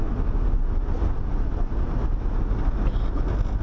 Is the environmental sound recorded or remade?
recorded